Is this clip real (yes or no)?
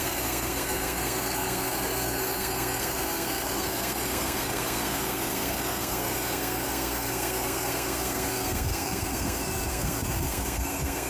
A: no